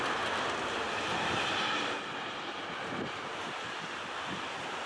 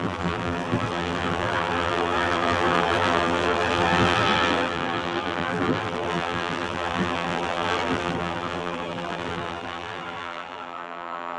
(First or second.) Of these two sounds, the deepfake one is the second